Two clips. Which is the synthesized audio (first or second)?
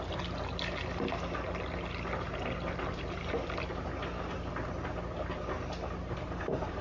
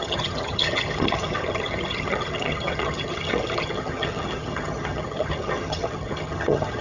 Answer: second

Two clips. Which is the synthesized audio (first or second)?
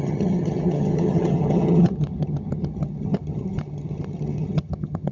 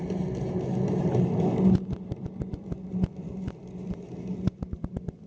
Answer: first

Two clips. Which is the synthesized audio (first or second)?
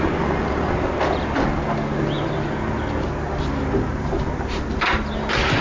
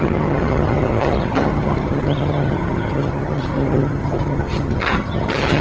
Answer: second